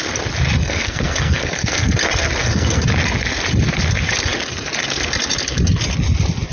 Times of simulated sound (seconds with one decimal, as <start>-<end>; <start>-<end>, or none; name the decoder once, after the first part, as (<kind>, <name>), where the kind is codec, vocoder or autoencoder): 0.6-1.9 (codec, SNAC); 2.4-2.9